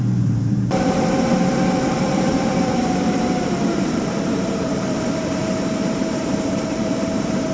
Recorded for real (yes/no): no